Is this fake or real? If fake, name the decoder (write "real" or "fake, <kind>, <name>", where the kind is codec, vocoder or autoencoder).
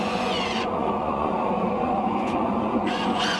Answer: fake, vocoder, Vocos